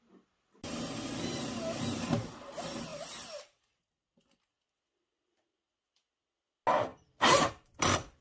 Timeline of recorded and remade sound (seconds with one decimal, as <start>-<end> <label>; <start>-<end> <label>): 0.0-8.2 recorded